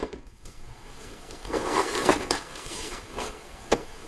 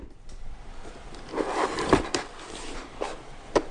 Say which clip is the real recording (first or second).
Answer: second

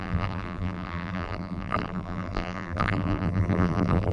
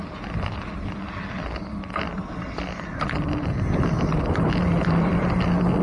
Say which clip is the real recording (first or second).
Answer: second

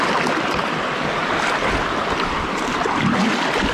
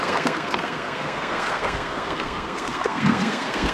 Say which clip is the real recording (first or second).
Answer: first